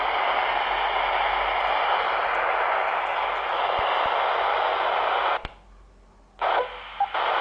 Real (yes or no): yes